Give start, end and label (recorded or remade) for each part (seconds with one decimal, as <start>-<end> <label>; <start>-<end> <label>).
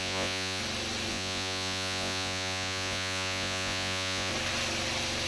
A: 0.0-0.6 remade; 0.6-1.1 recorded; 1.1-4.3 remade; 4.3-5.3 recorded